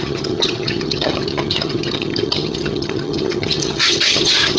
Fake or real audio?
fake